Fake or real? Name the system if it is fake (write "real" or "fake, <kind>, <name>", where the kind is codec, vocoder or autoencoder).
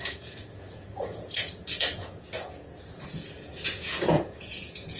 fake, vocoder, Vocos